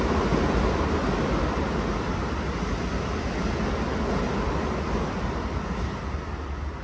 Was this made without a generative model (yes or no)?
yes